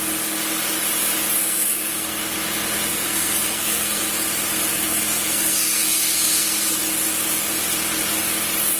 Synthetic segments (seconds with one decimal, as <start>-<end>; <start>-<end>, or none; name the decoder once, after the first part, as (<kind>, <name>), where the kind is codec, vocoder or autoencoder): 1.4-2.2 (codec, SNAC); 2.9-4.0; 4.7-6.8